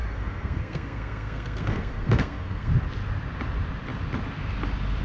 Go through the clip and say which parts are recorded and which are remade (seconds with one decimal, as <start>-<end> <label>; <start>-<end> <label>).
0.0-2.7 remade; 2.7-5.0 recorded